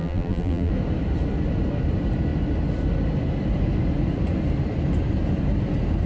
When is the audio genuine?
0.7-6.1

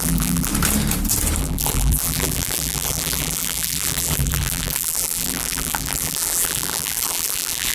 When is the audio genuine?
0.5-1.4